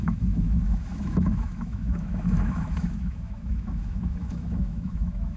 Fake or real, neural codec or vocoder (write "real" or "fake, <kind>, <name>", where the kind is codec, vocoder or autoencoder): fake, autoencoder, DAC-VAE